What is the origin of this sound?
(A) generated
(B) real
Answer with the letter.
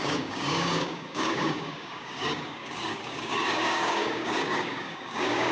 A